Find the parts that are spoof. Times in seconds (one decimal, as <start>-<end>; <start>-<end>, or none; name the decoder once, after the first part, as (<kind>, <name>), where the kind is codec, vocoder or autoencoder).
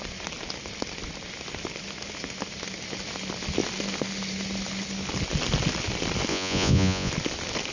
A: 6.3-7.1 (vocoder, Vocos)